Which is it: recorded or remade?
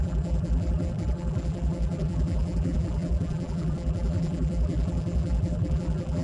remade